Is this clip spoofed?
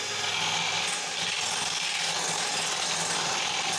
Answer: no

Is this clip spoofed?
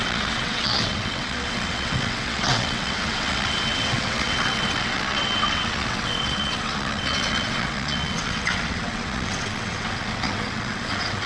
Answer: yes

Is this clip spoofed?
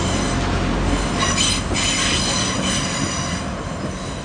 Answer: no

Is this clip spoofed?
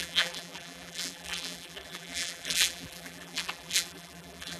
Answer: yes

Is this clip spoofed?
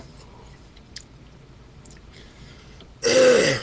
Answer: no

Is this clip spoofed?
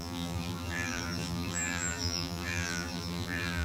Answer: yes